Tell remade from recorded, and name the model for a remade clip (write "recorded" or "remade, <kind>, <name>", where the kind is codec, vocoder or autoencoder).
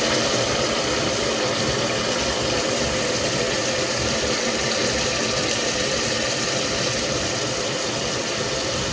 recorded